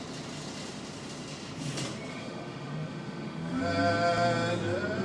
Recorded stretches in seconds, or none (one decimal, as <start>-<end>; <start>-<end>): 0.0-2.1; 3.6-5.0